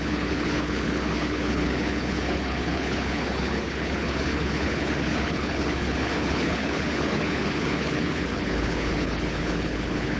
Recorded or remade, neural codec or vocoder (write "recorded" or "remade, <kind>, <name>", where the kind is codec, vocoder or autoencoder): remade, codec, HILCodec